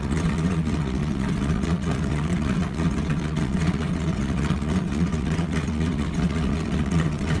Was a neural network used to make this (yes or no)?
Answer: yes